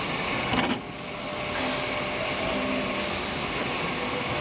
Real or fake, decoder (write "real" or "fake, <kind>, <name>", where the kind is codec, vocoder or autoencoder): real